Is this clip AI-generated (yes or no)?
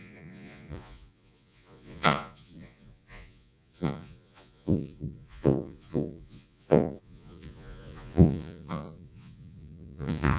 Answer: yes